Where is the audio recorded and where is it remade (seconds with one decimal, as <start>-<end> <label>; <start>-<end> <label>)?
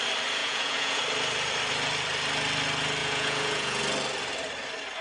0.0-0.4 recorded; 0.4-1.0 remade; 1.0-3.0 recorded; 3.0-3.8 remade; 3.8-5.0 recorded